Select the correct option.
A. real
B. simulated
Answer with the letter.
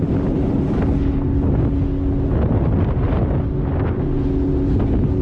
A